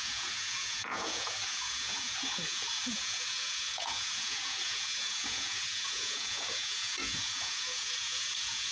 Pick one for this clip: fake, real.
fake